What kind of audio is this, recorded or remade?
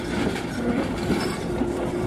remade